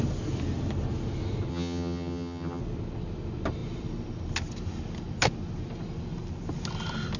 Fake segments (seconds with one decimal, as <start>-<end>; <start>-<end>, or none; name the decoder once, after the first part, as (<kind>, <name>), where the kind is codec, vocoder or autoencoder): 1.5-2.6 (vocoder, HiFi-GAN)